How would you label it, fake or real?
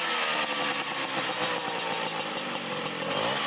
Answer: real